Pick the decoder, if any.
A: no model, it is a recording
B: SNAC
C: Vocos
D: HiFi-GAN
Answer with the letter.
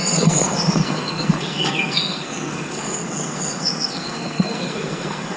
B